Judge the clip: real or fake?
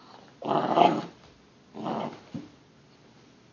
real